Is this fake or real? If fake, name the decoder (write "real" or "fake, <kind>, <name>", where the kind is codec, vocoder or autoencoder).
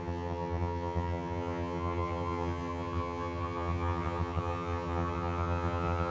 fake, vocoder, HiFi-GAN